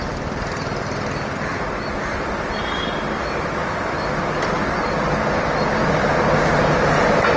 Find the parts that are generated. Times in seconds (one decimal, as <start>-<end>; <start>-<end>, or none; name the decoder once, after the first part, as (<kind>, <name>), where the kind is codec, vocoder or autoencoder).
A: 3.2-3.8 (vocoder, BigVGAN v2)